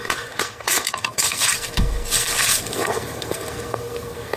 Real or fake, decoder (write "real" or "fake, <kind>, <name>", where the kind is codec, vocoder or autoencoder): fake, codec, SNAC